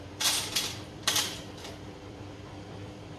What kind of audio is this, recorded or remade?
remade